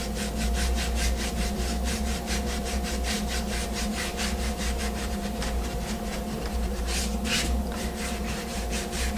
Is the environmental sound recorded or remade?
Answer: remade